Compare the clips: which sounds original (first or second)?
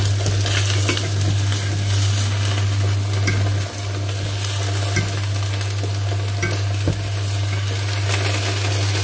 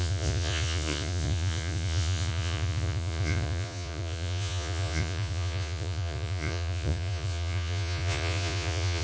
first